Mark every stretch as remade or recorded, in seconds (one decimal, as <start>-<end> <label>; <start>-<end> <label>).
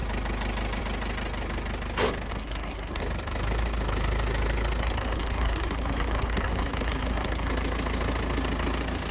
0.0-2.3 recorded; 2.3-3.0 remade; 3.0-4.8 recorded; 4.8-7.5 remade; 7.5-9.1 recorded